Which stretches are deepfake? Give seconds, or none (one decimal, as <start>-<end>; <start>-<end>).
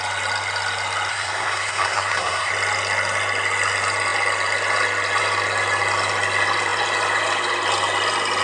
1.1-2.5